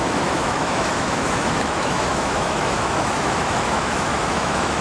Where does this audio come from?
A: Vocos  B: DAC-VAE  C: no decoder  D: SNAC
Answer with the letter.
B